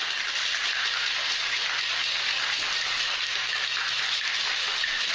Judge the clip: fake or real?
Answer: real